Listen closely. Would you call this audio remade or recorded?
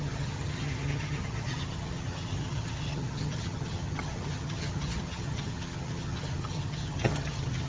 remade